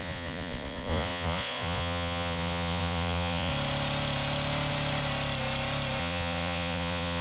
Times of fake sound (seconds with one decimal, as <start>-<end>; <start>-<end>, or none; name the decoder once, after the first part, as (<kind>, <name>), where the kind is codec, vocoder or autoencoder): 0.0-3.5 (vocoder, Vocos); 6.0-7.2